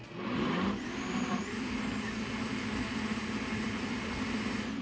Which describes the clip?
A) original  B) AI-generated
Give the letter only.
A